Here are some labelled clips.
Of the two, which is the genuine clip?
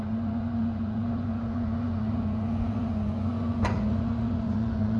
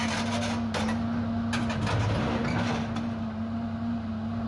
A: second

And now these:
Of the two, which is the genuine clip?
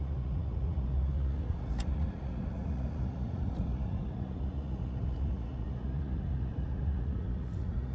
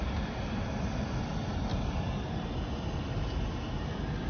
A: second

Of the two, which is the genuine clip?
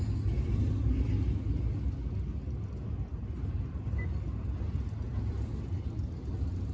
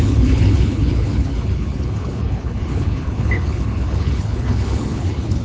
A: first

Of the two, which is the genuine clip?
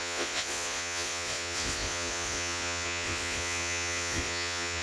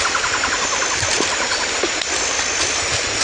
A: second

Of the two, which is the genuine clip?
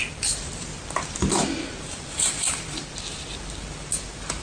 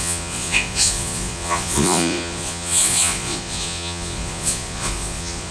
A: first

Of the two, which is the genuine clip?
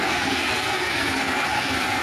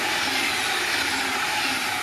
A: second